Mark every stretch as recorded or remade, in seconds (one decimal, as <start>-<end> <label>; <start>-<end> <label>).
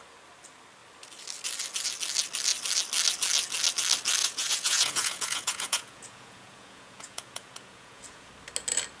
0.0-4.2 recorded; 4.2-8.3 remade; 8.3-9.0 recorded